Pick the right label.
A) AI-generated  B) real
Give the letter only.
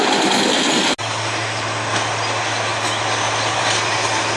B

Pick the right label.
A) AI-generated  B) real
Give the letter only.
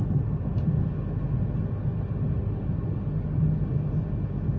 B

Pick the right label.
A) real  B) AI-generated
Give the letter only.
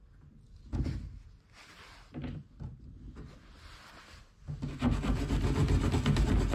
A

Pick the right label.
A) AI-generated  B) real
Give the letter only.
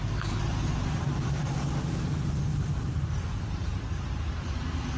A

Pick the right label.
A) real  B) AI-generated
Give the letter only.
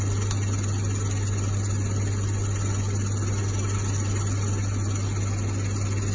A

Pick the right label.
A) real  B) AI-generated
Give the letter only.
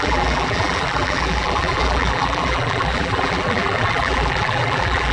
B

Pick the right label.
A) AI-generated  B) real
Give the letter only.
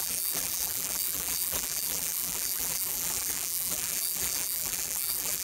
A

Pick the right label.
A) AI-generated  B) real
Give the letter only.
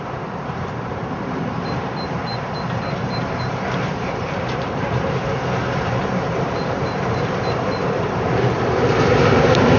A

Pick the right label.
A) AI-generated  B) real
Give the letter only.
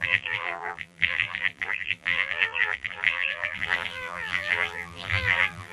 A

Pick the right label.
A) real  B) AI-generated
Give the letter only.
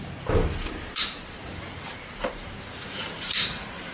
B